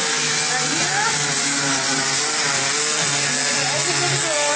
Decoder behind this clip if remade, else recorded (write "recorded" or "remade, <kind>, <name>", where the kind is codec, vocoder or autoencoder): recorded